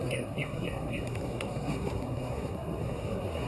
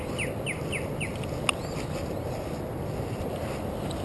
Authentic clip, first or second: second